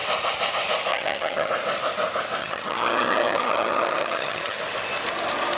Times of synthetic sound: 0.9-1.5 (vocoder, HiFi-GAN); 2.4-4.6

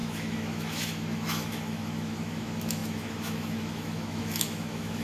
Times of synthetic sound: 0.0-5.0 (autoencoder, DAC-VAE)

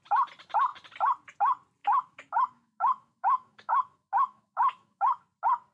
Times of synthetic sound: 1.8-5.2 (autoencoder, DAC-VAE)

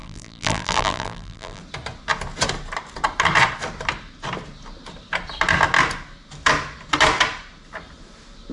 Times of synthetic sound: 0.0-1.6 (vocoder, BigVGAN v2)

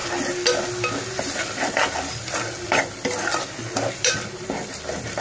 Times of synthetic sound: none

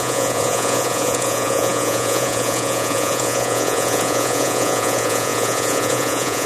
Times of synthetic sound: 0.0-6.5 (vocoder, Vocos)

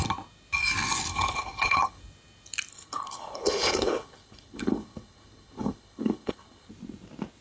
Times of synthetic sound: 1.1-2.0 (codec, HILCodec); 2.7-6.7

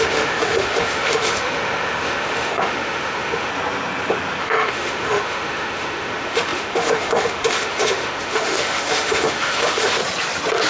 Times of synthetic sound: 0.0-3.5 (autoencoder, DAC-VAE); 4.4-10.0